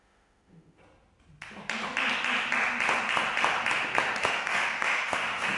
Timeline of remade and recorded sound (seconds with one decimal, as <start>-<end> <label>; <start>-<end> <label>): 0.0-0.8 remade; 0.8-4.2 recorded; 4.2-5.6 remade